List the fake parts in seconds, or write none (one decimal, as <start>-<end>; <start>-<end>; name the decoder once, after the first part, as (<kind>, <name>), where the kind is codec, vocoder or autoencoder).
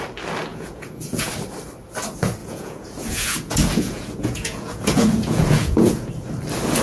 0.5-1.3 (vocoder, Vocos); 2.4-6.1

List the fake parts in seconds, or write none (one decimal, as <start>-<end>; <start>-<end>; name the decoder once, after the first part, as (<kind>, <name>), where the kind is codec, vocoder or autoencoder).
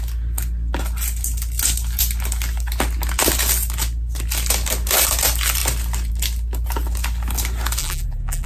7.8-8.5 (vocoder, BigVGAN v2)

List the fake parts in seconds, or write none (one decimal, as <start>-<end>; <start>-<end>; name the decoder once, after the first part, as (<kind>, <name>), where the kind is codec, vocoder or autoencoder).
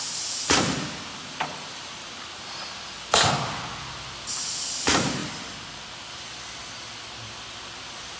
none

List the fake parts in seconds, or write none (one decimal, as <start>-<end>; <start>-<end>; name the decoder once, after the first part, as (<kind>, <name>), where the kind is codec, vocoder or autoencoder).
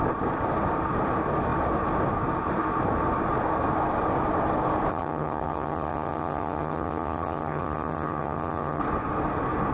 4.9-8.8 (vocoder, HiFi-GAN)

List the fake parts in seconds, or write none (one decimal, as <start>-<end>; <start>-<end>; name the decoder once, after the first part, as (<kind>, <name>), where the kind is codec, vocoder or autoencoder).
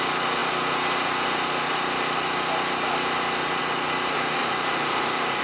4.4-5.4 (vocoder, Vocos)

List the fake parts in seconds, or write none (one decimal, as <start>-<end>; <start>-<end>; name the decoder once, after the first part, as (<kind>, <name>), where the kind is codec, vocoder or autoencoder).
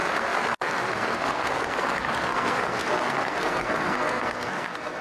0.0-5.0 (codec, SNAC)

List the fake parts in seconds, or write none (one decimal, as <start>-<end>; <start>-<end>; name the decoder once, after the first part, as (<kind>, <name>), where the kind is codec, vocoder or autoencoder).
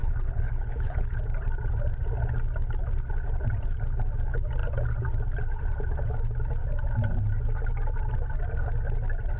0.0-1.2 (codec, HILCodec)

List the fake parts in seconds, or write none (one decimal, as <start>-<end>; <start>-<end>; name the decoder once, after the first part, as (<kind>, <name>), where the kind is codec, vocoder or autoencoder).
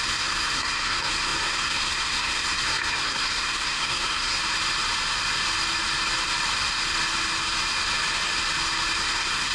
0.0-4.4 (codec, SNAC); 9.0-9.5